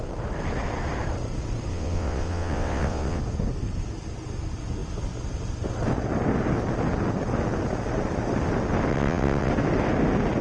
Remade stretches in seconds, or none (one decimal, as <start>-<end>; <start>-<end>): 1.7-3.2; 8.9-9.5